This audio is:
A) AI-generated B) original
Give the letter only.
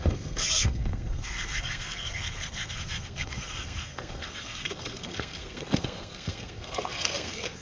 A